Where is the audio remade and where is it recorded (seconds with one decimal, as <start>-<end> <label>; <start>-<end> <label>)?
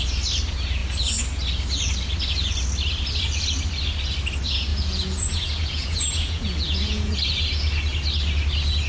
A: 0.0-4.7 recorded; 4.7-7.2 remade; 7.2-8.9 recorded